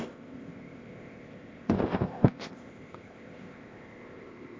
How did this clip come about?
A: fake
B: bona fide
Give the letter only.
A